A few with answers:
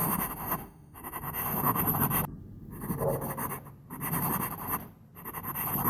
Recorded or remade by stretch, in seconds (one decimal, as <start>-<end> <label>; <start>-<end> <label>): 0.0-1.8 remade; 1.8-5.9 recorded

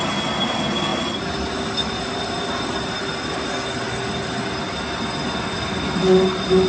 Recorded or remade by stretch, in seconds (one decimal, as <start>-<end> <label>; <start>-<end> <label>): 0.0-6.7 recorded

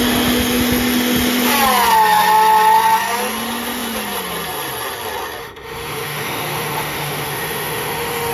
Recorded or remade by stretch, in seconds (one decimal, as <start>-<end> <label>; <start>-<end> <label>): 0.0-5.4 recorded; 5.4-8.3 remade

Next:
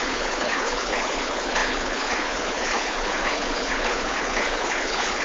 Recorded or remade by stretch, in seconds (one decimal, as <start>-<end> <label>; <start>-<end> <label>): 0.0-5.2 remade

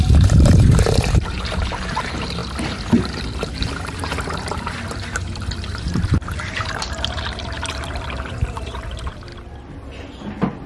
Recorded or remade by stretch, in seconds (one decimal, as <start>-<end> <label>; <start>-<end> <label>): 0.0-2.4 remade; 2.4-3.0 recorded; 3.0-9.3 remade; 9.3-10.7 recorded

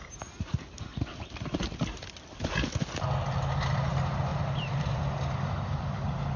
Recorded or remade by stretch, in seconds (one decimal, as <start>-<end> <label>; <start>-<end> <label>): 0.0-1.1 recorded; 1.1-1.6 remade; 1.6-4.3 recorded; 4.3-5.0 remade; 5.0-6.4 recorded